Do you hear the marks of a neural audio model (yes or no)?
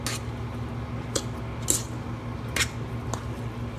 no